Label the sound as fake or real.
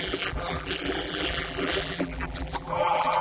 fake